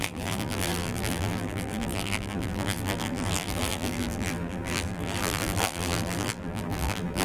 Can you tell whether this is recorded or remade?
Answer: remade